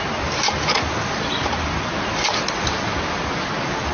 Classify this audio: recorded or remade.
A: remade